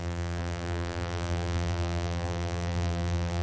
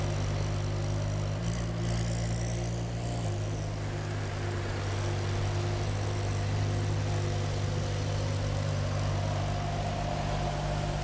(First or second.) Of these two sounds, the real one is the second